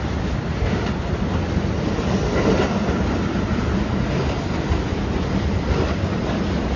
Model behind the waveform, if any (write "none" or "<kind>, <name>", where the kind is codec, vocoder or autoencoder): none